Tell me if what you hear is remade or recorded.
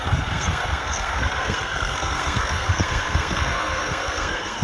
remade